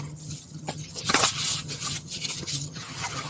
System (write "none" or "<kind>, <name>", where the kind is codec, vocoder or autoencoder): vocoder, HiFi-GAN